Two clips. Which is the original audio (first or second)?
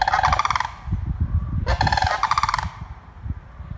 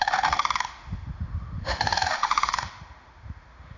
first